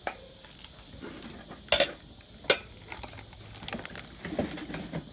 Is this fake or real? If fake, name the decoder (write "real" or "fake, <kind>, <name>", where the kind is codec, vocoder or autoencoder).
real